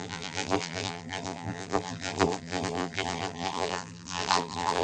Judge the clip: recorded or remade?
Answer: remade